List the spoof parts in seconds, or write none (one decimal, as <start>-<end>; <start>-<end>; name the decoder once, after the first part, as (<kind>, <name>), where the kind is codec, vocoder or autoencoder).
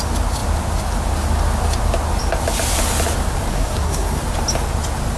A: 3.5-4.2 (codec, SNAC)